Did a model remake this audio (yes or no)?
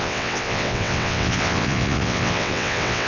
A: yes